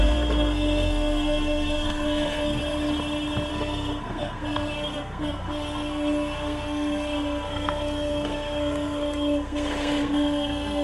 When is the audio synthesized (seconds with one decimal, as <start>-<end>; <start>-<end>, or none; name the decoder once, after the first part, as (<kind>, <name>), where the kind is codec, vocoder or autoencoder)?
0.0-2.6 (codec, SNAC); 3.5-10.8